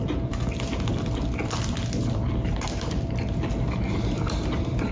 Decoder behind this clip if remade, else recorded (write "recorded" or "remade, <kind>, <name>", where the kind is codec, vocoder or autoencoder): recorded